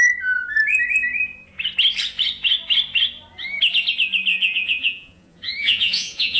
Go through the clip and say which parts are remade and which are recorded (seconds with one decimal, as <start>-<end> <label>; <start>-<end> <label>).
0.0-4.3 recorded; 4.3-6.4 remade